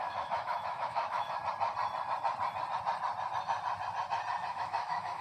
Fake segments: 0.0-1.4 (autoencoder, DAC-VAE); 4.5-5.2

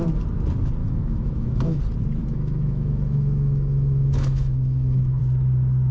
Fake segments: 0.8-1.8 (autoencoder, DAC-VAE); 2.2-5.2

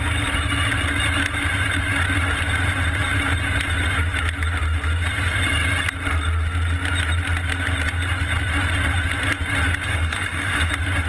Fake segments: 9.9-10.7 (autoencoder, DAC-VAE)

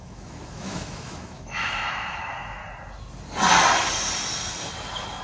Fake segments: 0.0-2.6 (autoencoder, DAC-VAE)

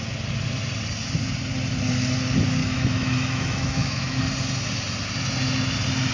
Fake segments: 2.6-4.2 (autoencoder, DAC-VAE)

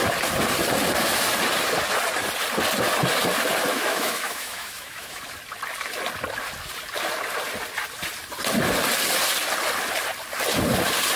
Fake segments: 3.7-5.2 (autoencoder, DAC-VAE)